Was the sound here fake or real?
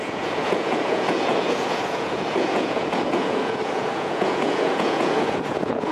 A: fake